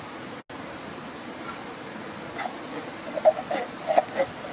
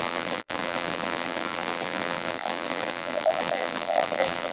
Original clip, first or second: first